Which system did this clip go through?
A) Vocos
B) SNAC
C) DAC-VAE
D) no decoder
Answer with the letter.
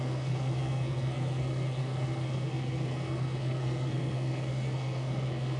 B